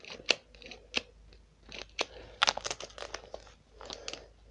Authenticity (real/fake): real